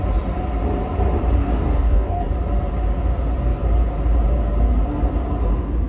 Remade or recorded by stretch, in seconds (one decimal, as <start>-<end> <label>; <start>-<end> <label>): 0.0-1.4 recorded; 1.4-2.3 remade; 2.3-5.9 recorded